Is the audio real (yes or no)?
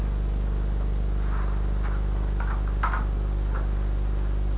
yes